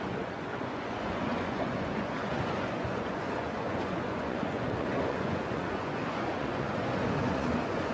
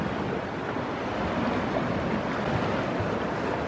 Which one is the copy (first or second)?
first